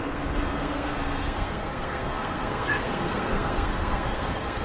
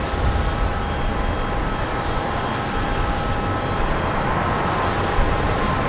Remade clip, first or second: first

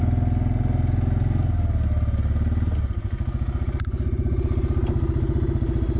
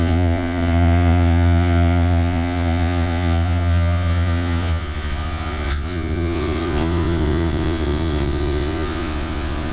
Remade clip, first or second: second